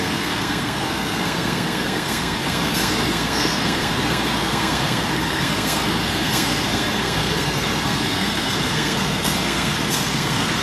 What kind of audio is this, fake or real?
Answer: fake